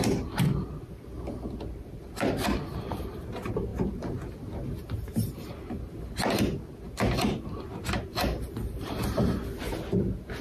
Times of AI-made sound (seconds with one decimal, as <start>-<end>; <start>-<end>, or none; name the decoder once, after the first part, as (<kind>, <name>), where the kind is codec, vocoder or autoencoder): none